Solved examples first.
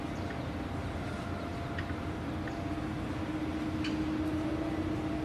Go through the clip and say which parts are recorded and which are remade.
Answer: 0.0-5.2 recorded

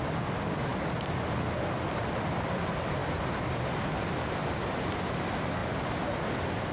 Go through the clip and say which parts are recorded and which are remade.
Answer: 0.0-3.0 recorded; 3.0-4.8 remade; 4.8-6.7 recorded

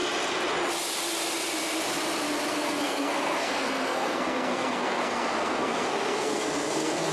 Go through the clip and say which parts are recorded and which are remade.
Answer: 0.0-2.5 recorded; 2.5-7.1 remade

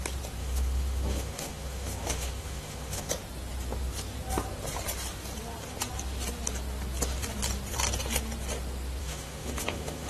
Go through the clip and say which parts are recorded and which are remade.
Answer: 0.0-0.4 recorded; 0.4-3.1 remade; 3.1-9.0 recorded; 9.0-10.1 remade

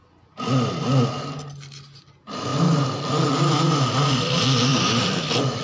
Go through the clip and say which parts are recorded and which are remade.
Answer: 0.0-4.7 recorded; 4.7-5.6 remade